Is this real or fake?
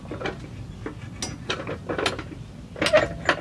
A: real